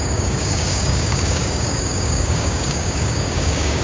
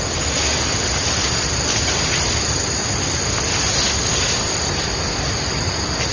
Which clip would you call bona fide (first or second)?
second